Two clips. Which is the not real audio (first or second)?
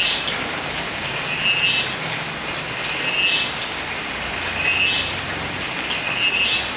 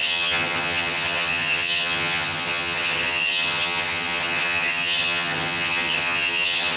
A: second